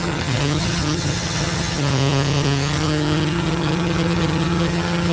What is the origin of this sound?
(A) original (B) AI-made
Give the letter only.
B